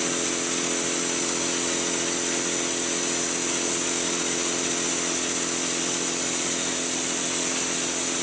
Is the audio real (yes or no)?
yes